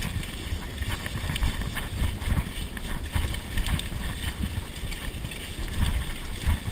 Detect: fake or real real